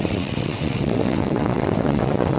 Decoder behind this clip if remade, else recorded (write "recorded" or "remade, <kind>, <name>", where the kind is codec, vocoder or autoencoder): remade, vocoder, WaveNeXt